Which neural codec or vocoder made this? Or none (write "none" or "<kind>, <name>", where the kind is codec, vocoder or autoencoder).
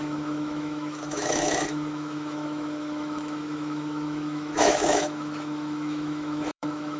autoencoder, DAC-VAE